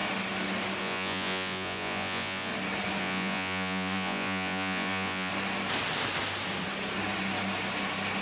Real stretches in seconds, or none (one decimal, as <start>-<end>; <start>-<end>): 0.0-0.8; 2.5-3.0; 5.3-8.2